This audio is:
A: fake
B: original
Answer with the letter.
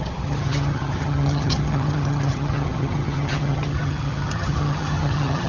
A